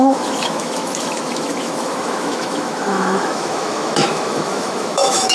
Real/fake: fake